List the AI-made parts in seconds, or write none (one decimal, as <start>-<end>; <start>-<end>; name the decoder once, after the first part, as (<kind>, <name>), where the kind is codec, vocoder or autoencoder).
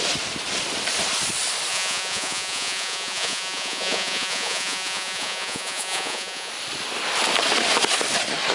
1.7-6.5 (vocoder, Vocos)